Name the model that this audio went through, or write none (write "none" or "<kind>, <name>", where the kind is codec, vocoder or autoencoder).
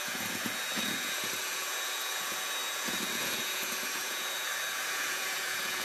vocoder, Vocos